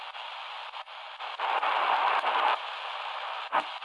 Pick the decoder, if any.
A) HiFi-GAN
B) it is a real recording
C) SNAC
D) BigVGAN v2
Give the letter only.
B